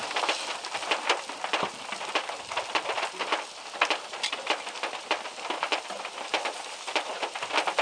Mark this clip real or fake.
real